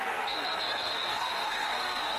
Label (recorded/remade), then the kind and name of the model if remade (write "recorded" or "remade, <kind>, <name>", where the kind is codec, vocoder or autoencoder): remade, codec, SNAC